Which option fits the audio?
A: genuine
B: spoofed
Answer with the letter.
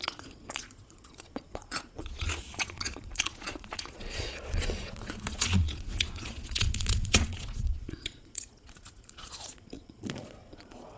B